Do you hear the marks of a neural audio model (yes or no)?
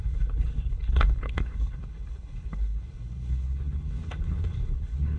yes